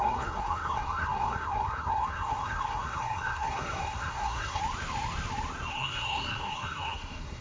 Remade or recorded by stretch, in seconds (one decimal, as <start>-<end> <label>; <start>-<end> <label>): 0.0-4.6 remade; 4.6-5.7 recorded; 5.7-7.4 remade